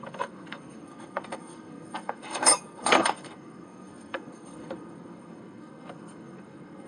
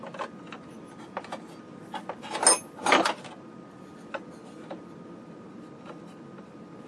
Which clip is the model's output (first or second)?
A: first